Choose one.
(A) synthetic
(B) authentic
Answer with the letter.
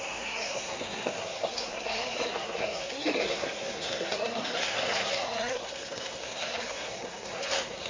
A